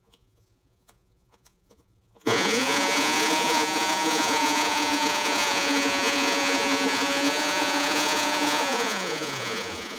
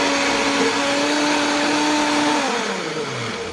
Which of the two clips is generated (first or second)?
first